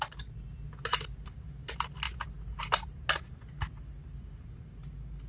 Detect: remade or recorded recorded